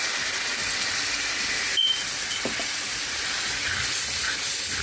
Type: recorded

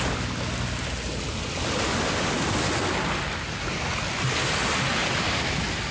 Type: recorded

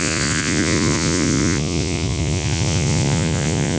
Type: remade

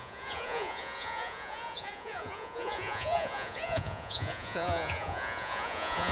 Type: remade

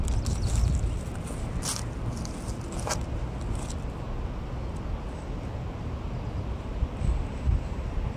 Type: recorded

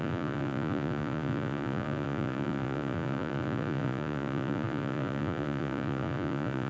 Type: remade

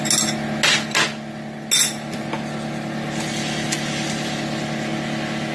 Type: recorded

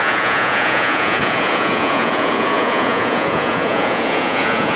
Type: remade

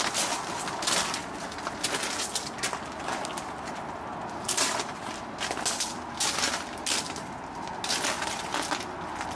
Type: recorded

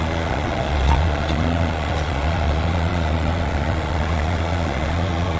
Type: remade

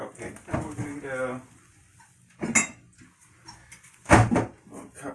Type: recorded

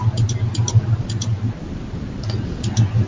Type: recorded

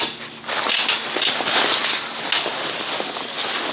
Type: recorded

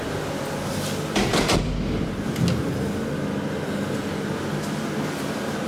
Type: recorded